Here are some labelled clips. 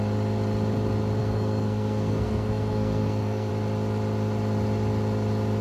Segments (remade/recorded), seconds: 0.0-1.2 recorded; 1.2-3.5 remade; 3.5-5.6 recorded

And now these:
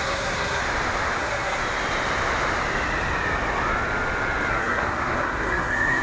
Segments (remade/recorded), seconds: 0.0-0.6 remade; 0.6-1.2 recorded; 1.2-1.6 remade; 1.6-4.5 recorded; 4.5-6.0 remade

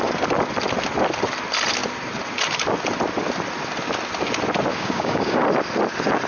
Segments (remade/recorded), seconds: 0.0-4.7 recorded; 4.7-5.4 remade; 5.4-6.3 recorded

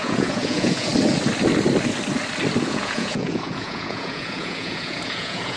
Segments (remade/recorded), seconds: 0.0-0.9 remade; 0.9-2.6 recorded; 2.6-5.6 remade